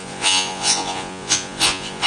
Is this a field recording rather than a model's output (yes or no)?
no